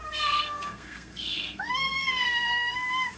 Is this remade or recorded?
remade